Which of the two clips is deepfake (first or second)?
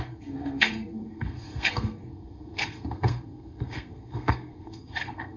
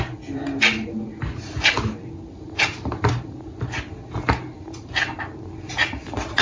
first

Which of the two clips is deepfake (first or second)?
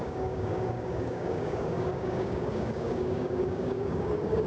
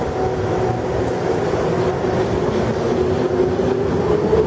first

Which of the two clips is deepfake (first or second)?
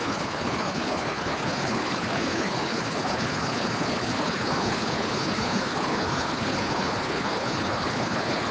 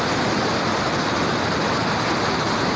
first